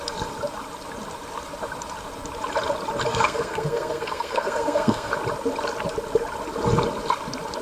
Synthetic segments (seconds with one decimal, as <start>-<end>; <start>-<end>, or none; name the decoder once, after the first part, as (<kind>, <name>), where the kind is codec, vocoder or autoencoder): 3.1-5.1 (codec, SNAC)